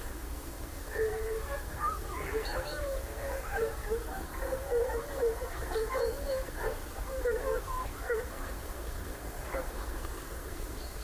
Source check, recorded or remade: remade